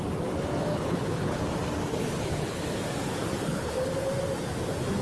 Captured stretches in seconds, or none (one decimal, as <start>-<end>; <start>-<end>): 0.0-0.7; 1.4-1.9; 2.6-3.1; 3.9-5.0